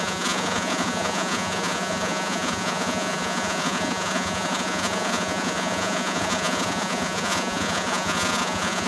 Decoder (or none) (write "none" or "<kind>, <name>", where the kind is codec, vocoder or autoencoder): vocoder, Vocos